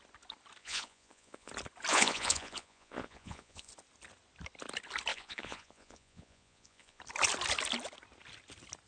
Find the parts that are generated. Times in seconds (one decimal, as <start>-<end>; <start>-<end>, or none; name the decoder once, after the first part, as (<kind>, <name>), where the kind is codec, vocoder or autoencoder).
0.6-1.5 (vocoder, Vocos); 1.9-3.7; 5.1-7.0